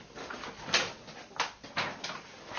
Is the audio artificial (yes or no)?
no